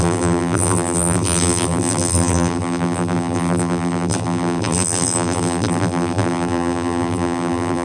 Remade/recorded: remade